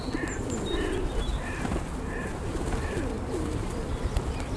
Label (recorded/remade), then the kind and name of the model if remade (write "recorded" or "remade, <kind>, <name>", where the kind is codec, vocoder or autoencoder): recorded